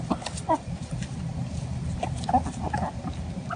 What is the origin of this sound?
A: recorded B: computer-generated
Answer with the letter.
A